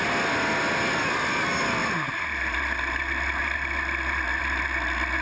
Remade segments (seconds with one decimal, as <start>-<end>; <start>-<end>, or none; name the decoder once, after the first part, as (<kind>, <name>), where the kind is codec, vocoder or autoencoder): none